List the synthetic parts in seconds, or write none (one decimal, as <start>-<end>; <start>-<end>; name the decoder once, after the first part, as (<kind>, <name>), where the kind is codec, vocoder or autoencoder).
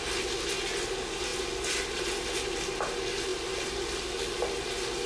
none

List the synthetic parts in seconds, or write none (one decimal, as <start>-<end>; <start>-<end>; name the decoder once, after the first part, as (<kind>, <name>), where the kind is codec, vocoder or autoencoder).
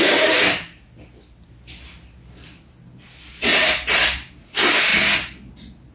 none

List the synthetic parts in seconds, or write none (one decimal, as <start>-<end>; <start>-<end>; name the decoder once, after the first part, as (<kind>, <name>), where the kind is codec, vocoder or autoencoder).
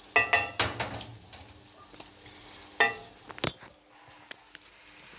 none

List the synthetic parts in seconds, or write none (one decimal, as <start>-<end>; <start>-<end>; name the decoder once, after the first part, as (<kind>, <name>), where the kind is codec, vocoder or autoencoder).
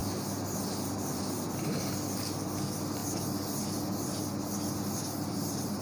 0.0-3.0 (vocoder, BigVGAN v2); 5.3-5.8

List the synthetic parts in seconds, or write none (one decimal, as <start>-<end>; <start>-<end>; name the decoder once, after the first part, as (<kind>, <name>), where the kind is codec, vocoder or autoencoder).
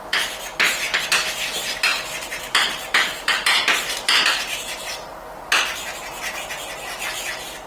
none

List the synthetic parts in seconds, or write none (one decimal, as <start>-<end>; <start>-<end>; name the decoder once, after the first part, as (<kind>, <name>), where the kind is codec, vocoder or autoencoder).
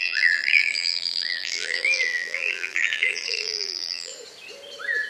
0.0-4.1 (vocoder, BigVGAN v2)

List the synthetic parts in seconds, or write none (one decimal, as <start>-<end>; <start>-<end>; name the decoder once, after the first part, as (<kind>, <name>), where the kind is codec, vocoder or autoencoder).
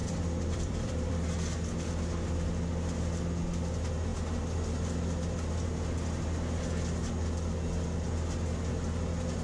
0.0-1.1 (vocoder, BigVGAN v2)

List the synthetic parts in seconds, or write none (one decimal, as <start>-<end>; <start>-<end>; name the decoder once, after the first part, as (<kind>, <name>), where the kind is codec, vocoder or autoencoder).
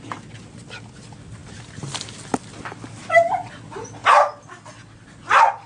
none